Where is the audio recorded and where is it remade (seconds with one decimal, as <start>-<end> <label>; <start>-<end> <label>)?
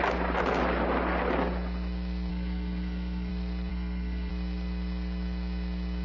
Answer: 0.0-2.3 recorded; 2.3-3.3 remade; 3.3-3.7 recorded; 3.7-4.3 remade; 4.3-6.0 recorded